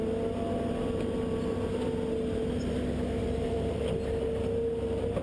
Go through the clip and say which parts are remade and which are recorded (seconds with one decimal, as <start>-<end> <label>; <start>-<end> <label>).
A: 0.0-3.2 recorded; 3.2-3.9 remade; 3.9-5.2 recorded